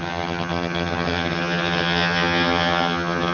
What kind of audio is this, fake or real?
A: fake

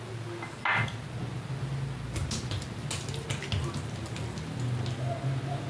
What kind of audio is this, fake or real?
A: real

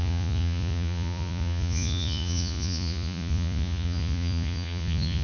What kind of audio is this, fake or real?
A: fake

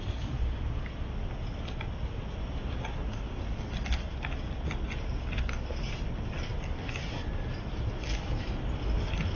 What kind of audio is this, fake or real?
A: real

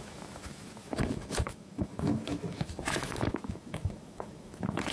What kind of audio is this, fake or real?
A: fake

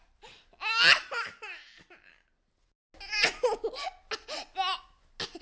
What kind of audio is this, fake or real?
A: real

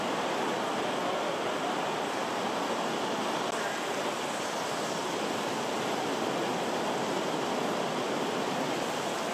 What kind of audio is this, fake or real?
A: real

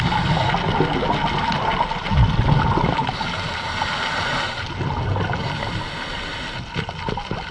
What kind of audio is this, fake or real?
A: real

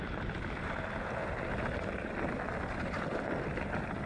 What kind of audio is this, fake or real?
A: real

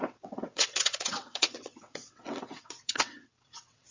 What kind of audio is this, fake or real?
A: fake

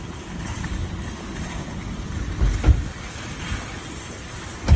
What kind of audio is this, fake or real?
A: real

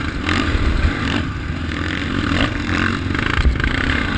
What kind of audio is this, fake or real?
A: real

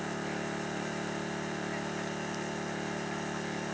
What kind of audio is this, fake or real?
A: real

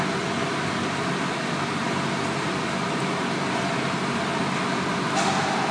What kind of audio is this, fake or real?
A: real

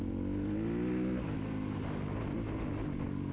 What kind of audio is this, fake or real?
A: real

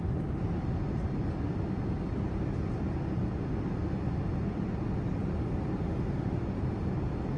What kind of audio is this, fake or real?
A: real